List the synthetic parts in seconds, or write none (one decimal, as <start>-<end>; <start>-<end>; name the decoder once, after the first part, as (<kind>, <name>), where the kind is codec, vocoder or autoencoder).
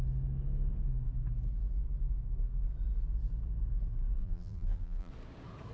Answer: 4.2-5.1 (vocoder, BigVGAN v2)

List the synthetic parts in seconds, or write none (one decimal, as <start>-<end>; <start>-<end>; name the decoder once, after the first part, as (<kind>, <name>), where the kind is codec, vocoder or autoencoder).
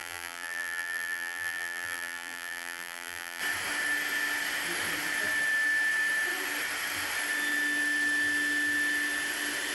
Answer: 0.0-3.4 (vocoder, BigVGAN v2)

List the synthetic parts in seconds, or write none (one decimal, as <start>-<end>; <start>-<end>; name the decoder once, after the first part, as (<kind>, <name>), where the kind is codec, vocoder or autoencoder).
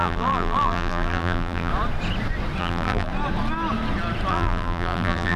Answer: 0.0-1.7 (vocoder, BigVGAN v2); 2.6-3.1; 4.3-5.4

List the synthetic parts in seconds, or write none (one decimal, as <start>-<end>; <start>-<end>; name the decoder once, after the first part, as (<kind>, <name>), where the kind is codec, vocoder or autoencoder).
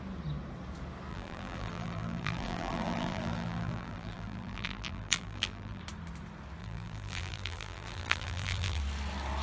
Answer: 1.1-5.8 (vocoder, BigVGAN v2); 6.6-8.8